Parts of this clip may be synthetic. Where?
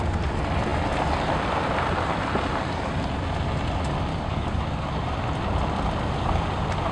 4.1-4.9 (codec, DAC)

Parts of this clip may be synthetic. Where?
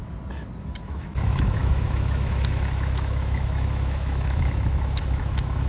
0.6-5.7 (autoencoder, DAC-VAE)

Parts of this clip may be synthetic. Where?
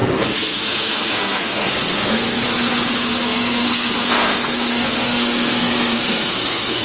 0.0-6.8 (codec, SNAC)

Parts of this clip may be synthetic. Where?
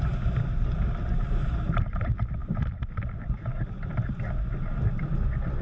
none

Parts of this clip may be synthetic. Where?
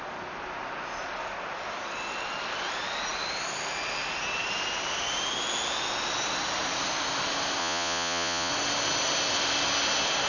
7.6-8.5 (vocoder, Vocos)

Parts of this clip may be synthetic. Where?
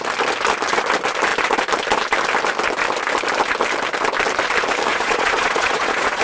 4.9-6.2 (vocoder, Vocos)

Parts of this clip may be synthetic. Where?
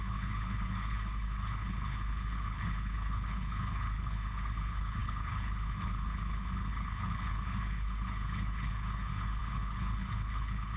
0.0-10.8 (codec, HILCodec)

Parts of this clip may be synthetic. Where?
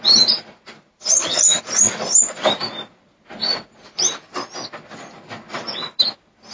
1.0-1.6 (vocoder, HiFi-GAN)